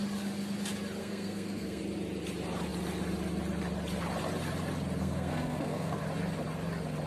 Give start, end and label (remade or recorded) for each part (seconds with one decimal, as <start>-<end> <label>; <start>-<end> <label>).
0.0-1.0 recorded; 1.0-1.8 remade; 1.8-5.0 recorded; 5.0-6.0 remade; 6.0-7.1 recorded